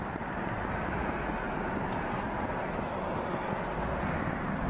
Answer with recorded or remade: recorded